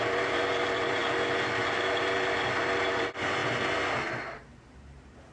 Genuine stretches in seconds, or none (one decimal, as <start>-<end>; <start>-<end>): 1.0-1.6